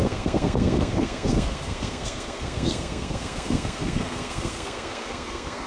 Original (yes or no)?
no